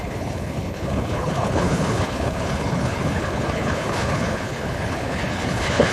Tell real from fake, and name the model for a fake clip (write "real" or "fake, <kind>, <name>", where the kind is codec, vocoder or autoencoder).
fake, codec, HILCodec